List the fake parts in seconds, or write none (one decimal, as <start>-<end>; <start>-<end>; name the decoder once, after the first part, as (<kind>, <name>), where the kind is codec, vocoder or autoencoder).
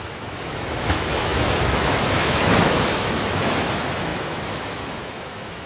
0.0-5.7 (autoencoder, DAC-VAE)